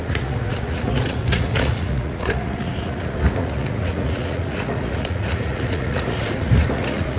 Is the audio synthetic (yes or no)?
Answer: yes